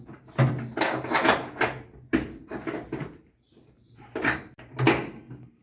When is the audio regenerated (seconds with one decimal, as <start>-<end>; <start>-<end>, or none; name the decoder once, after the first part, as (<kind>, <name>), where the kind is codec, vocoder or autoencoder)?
2.5-4.5 (vocoder, BigVGAN v2)